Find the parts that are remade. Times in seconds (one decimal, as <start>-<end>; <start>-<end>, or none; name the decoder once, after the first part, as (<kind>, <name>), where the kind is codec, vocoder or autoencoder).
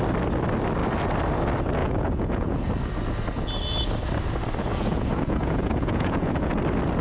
1.8-2.7 (vocoder, Vocos); 4.7-6.5